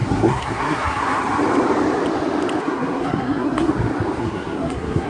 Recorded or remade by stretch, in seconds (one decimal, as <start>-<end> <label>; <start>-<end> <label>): 0.0-1.2 remade; 1.2-2.6 recorded; 2.6-3.7 remade; 3.7-4.2 recorded; 4.2-5.1 remade